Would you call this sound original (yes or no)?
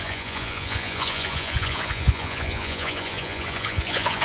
no